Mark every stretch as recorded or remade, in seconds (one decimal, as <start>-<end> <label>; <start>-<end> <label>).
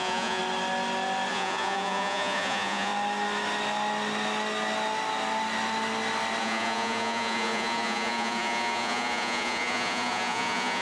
0.0-0.4 remade; 0.4-1.3 recorded; 1.3-2.9 remade; 2.9-6.4 recorded; 6.4-10.8 remade